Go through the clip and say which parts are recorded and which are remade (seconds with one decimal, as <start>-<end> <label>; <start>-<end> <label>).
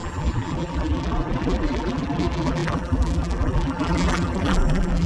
0.0-5.1 remade